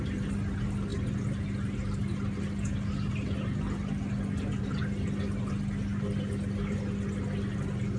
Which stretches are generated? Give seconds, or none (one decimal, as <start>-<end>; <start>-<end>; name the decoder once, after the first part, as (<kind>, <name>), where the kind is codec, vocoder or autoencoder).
none